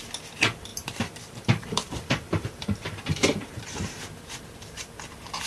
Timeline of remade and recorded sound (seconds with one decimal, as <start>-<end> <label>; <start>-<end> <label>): 0.0-0.7 recorded; 0.7-4.0 remade; 4.0-5.5 recorded